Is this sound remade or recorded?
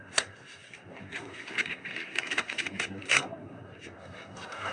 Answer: remade